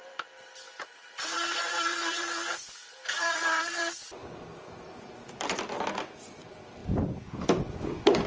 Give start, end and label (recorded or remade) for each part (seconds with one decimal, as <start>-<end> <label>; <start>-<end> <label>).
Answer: 0.0-4.2 remade; 4.2-4.8 recorded; 4.8-6.8 remade; 6.8-7.9 recorded; 7.9-8.3 remade